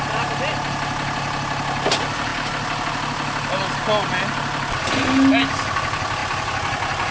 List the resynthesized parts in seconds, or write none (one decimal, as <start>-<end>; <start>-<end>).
none